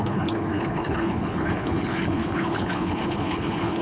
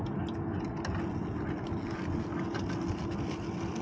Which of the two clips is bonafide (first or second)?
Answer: second